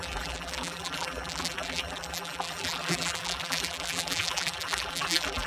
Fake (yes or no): yes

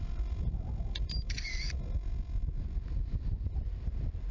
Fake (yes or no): yes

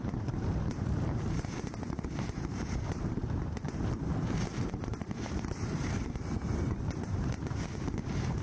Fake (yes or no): yes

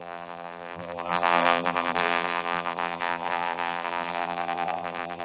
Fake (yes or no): yes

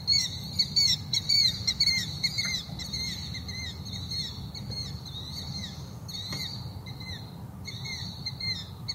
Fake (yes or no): yes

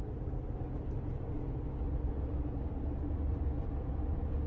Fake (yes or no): no